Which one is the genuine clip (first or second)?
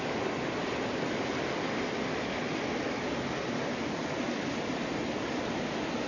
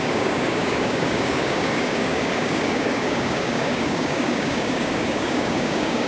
first